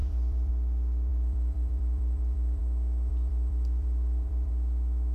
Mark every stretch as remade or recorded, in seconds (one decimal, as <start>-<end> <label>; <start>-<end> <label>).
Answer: 0.0-0.5 remade; 0.5-1.1 recorded; 1.1-2.6 remade; 2.6-3.1 recorded; 3.1-4.5 remade; 4.5-5.1 recorded